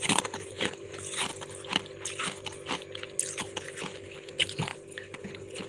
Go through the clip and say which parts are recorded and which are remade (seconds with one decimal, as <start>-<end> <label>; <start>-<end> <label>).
0.0-0.9 remade; 0.9-3.4 recorded; 3.4-5.7 remade